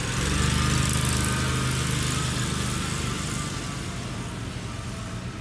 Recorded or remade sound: recorded